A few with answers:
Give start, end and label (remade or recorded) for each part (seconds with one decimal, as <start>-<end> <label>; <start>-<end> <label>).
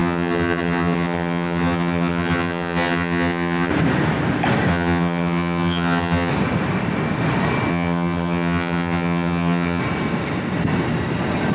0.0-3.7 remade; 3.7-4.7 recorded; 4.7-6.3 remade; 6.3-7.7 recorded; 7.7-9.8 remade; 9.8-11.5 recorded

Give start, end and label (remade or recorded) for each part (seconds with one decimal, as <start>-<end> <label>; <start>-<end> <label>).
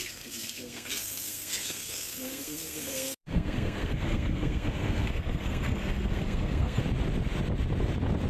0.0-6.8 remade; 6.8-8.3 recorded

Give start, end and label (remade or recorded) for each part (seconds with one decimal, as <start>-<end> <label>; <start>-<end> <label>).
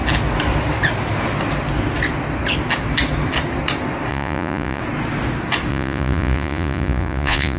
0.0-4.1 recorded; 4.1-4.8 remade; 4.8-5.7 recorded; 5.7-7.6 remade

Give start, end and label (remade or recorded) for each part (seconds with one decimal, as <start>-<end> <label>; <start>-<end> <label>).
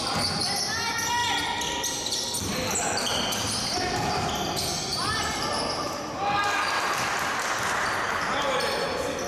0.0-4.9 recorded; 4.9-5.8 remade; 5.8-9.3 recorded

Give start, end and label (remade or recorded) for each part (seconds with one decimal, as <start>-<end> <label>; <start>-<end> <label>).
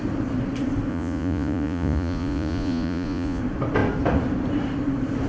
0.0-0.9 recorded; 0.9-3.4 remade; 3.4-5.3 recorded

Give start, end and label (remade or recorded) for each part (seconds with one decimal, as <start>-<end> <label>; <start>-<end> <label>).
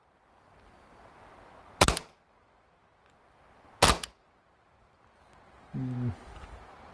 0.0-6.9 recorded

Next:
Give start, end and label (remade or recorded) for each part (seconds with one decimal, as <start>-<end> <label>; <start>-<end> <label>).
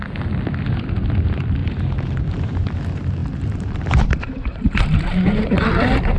0.0-1.6 recorded; 1.6-2.8 remade; 2.8-3.2 recorded; 3.2-4.6 remade; 4.6-6.2 recorded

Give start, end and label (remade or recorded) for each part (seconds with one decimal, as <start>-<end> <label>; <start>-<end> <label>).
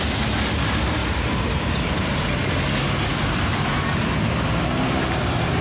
0.0-5.6 recorded